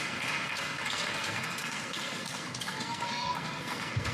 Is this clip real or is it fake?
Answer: fake